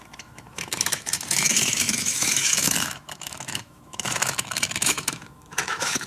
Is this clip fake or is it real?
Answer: fake